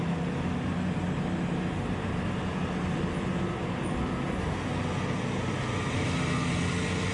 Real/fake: real